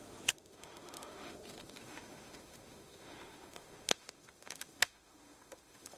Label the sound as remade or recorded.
remade